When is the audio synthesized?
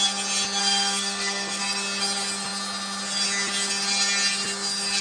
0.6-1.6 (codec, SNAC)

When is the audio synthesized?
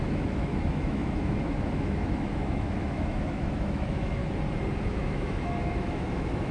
0.0-4.2 (autoencoder, DAC-VAE); 4.8-6.5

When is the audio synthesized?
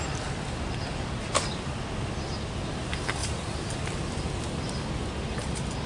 3.2-3.7 (vocoder, BigVGAN v2)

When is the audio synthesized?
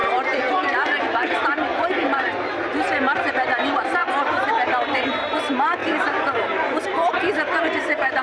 1.0-4.0 (vocoder, BigVGAN v2); 5.1-5.8; 6.6-8.2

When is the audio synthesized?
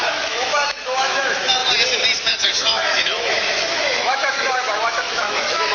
0.0-1.6 (autoencoder, DAC-VAE); 2.3-5.7